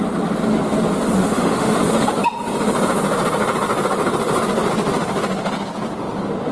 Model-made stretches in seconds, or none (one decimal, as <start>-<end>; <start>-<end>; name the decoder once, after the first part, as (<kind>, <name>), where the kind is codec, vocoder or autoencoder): 1.2-1.8 (autoencoder, DAC-VAE)

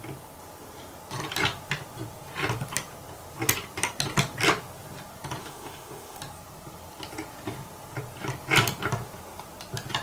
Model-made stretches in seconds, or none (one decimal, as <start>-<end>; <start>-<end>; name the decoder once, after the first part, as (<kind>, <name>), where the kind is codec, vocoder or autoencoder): 5.4-6.2 (autoencoder, DAC-VAE)

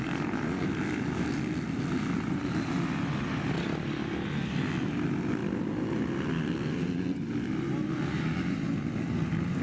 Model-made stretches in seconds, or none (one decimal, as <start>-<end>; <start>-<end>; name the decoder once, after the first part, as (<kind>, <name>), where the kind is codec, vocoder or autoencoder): none

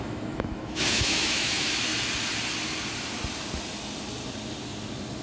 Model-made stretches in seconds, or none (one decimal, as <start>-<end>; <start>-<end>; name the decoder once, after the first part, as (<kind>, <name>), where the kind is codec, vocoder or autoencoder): 0.0-1.9 (autoencoder, DAC-VAE)

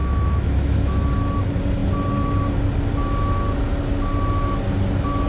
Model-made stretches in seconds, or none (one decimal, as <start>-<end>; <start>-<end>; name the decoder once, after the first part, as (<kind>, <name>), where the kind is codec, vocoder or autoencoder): 0.0-1.0 (autoencoder, DAC-VAE)

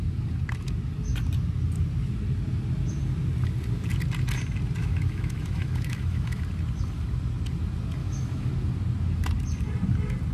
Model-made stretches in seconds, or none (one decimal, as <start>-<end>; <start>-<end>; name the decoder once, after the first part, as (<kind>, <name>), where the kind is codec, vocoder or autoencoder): 4.8-6.4 (autoencoder, DAC-VAE); 8.0-8.5